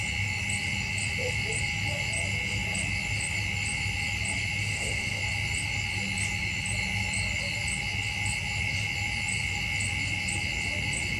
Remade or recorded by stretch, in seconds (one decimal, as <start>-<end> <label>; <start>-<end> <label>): 0.0-4.6 recorded; 4.6-5.2 remade; 5.2-11.2 recorded